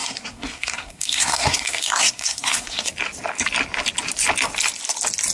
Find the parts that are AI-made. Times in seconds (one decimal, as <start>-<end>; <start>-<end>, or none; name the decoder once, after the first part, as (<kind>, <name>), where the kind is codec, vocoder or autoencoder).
0.0-2.9 (codec, SNAC)